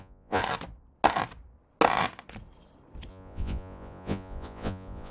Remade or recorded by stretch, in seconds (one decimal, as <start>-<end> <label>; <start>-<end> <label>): 0.0-0.4 remade; 0.4-3.1 recorded; 3.1-5.1 remade